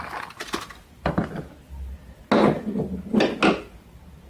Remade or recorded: recorded